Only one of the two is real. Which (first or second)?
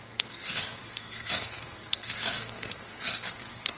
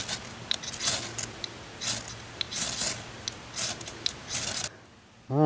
second